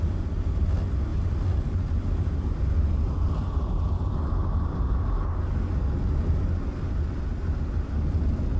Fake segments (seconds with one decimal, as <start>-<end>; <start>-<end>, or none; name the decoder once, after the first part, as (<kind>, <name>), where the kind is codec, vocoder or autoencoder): none